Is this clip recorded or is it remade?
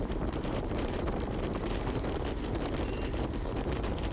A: remade